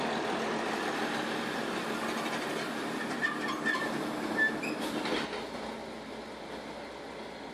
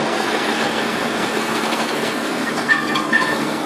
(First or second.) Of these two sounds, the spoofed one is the second